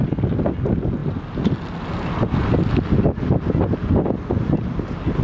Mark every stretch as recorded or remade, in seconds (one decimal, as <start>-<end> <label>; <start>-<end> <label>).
0.0-5.2 recorded